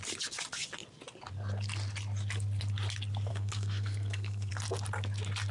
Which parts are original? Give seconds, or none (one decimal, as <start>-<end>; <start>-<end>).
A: 0.0-3.3; 4.5-5.5